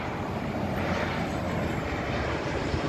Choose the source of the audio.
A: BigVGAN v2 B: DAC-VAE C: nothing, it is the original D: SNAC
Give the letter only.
C